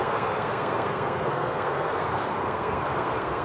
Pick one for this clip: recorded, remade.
remade